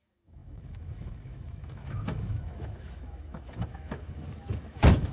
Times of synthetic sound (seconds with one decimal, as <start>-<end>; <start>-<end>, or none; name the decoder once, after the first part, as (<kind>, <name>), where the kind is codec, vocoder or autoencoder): 0.0-5.1 (autoencoder, DAC-VAE)